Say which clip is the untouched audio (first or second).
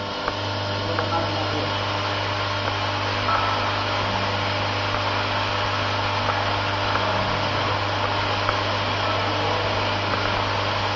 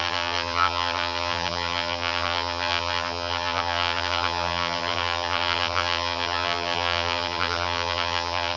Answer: first